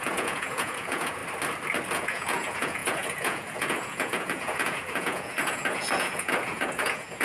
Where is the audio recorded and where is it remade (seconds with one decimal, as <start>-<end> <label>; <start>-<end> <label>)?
0.0-1.2 remade; 1.2-1.9 recorded; 1.9-7.2 remade